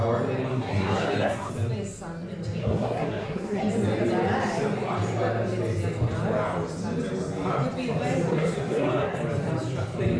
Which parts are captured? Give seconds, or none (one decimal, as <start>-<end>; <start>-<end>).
0.0-0.5; 1.5-2.6; 3.6-8.3; 9.2-10.2